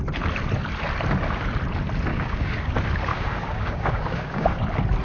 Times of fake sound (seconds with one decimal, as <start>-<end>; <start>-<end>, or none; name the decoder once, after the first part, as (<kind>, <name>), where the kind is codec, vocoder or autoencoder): 2.1-2.7 (codec, DAC); 3.1-4.6